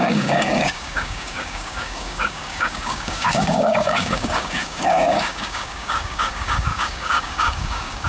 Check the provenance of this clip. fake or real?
fake